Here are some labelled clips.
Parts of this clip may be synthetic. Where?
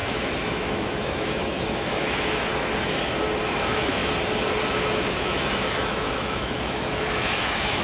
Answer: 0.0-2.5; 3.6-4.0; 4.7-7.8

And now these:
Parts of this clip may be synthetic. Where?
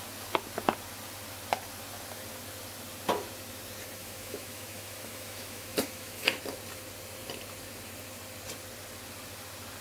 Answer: 4.0-6.4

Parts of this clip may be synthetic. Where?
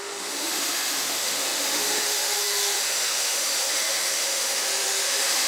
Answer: 0.0-5.5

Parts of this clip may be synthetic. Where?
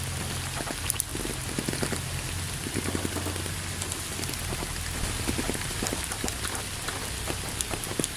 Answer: none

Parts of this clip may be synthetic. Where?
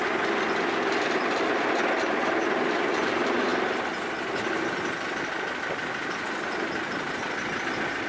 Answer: none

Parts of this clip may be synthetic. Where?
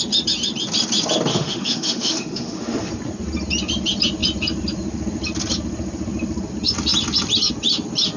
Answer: 1.3-2.9